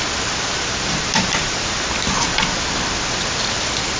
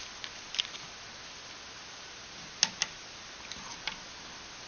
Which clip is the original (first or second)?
second